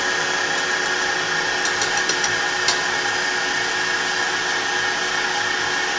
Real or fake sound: real